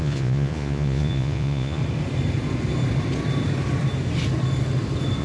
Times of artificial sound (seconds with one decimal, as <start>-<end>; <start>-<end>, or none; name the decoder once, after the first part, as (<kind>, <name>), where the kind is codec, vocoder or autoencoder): 0.0-1.8 (vocoder, Vocos)